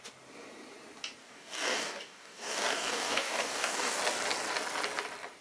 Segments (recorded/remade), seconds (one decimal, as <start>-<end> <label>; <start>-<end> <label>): 0.0-1.2 recorded; 1.2-4.0 remade; 4.0-5.4 recorded